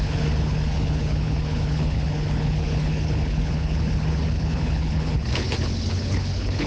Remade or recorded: remade